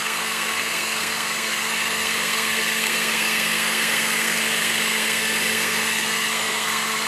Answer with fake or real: fake